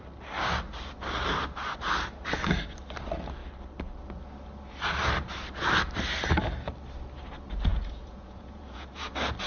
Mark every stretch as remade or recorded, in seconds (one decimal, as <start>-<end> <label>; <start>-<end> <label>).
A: 0.0-7.7 recorded; 7.7-9.1 remade; 9.1-9.5 recorded